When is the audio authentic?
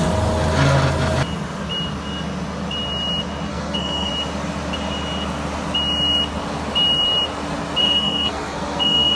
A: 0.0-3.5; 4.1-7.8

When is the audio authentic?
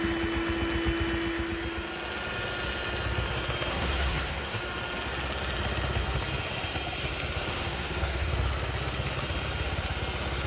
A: 0.0-3.7; 4.6-7.5; 8.3-10.5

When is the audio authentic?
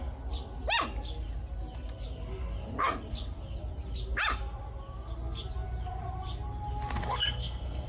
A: 0.0-7.0